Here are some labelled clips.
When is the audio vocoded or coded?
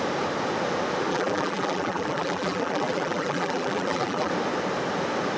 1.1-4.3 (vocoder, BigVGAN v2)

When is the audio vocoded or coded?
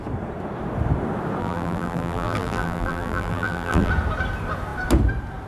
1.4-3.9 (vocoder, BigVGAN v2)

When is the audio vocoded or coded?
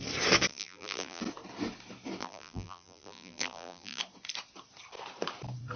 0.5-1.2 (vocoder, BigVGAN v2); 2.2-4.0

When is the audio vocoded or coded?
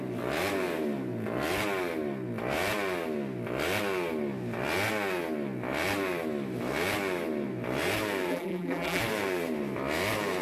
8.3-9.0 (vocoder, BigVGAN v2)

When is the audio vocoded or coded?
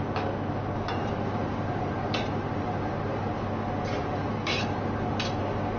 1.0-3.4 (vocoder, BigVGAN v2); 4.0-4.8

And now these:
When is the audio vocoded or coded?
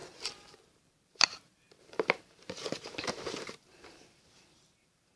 0.0-5.2 (vocoder, BigVGAN v2)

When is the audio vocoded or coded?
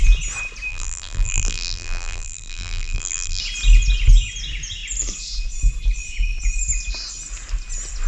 0.7-3.4 (vocoder, BigVGAN v2)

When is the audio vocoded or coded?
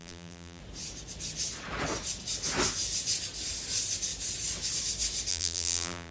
0.0-0.6 (vocoder, BigVGAN v2); 5.3-6.1